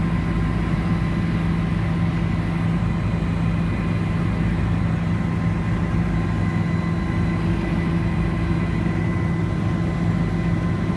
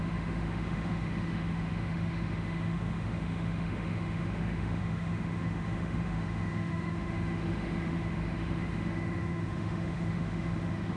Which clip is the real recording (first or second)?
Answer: first